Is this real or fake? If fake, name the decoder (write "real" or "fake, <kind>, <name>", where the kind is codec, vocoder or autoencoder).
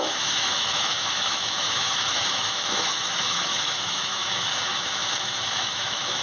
fake, autoencoder, DAC-VAE